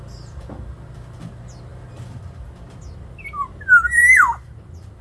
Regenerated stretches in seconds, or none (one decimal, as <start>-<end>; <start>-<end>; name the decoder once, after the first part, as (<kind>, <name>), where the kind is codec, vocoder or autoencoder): none